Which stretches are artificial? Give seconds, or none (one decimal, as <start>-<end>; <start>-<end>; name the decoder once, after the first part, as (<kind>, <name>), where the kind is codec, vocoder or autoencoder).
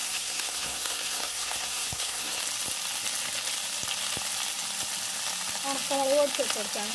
0.0-2.4 (codec, SNAC)